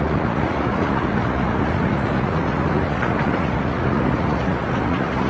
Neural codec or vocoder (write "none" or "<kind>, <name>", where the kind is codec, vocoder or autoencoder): vocoder, Vocos